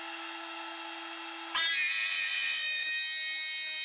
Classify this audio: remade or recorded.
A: recorded